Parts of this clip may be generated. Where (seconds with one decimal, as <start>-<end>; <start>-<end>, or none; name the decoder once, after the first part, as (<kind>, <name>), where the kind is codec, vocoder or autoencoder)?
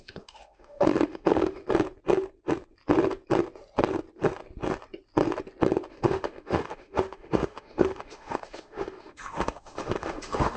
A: 0.0-1.6 (autoencoder, DAC-VAE); 5.9-10.6